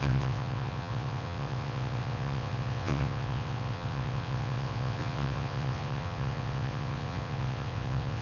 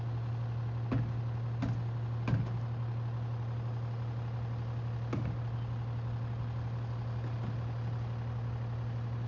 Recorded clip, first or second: second